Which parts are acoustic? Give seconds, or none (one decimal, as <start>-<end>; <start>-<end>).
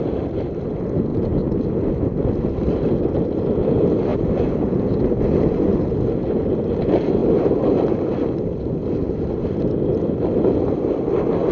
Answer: 0.0-1.1; 1.7-4.1; 5.0-11.5